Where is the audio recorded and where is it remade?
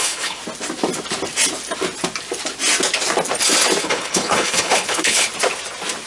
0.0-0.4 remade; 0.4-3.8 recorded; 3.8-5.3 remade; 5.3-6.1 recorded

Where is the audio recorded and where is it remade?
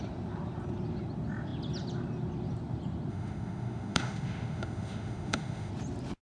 0.0-3.1 recorded; 3.1-5.7 remade; 5.7-6.2 recorded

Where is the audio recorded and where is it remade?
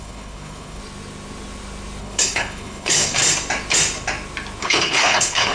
0.0-0.8 remade; 0.8-2.0 recorded; 2.0-3.2 remade; 3.2-4.6 recorded; 4.6-5.5 remade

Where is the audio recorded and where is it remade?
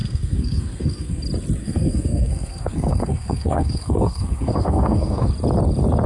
0.0-1.2 remade; 1.2-1.6 recorded; 1.6-5.3 remade; 5.3-6.1 recorded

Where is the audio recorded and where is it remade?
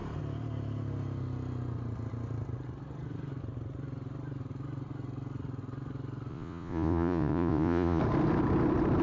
0.0-6.3 recorded; 6.3-8.0 remade; 8.0-9.0 recorded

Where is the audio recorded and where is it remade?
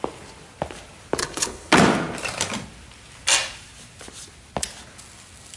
0.0-1.2 recorded; 1.2-1.7 remade; 1.7-5.6 recorded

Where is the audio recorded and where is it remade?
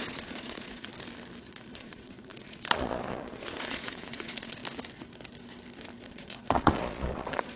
0.0-0.9 remade; 0.9-1.5 recorded; 1.5-4.6 remade; 4.6-6.1 recorded; 6.1-7.6 remade